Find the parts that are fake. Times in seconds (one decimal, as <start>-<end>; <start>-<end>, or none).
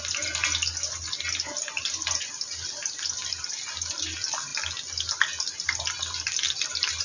none